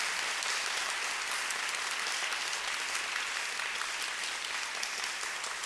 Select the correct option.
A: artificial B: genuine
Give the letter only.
B